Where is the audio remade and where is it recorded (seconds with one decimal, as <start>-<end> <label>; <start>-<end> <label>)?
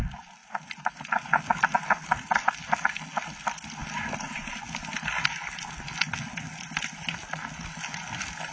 0.0-0.4 recorded; 0.4-1.4 remade; 1.4-8.5 recorded